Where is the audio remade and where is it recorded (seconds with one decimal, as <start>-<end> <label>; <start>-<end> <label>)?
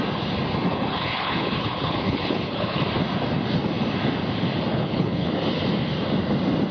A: 0.0-0.7 recorded; 0.7-2.8 remade; 2.8-4.7 recorded; 4.7-5.3 remade; 5.3-6.7 recorded